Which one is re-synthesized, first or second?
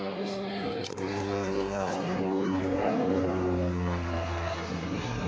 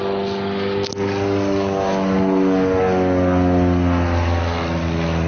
first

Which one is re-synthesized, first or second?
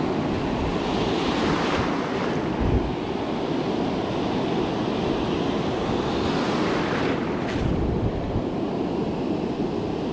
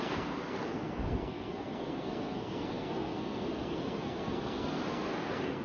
second